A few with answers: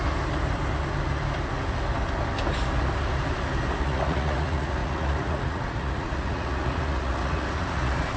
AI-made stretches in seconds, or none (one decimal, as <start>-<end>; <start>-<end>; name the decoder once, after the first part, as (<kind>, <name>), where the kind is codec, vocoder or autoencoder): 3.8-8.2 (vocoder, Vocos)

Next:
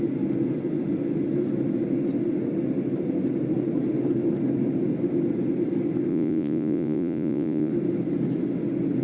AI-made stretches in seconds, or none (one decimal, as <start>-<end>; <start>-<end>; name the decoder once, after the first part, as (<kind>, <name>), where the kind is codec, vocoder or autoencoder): 6.1-7.7 (vocoder, Vocos)

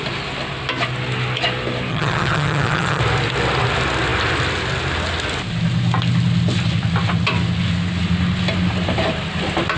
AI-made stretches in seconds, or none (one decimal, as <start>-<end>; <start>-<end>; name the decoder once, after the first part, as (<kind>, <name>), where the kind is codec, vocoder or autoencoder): 1.9-3.0 (vocoder, HiFi-GAN)